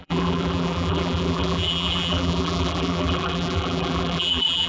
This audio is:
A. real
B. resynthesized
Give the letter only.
B